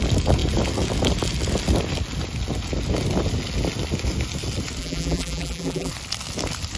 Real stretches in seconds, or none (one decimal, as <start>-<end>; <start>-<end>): 0.0-4.8; 5.9-6.8